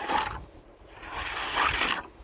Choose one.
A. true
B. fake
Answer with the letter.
A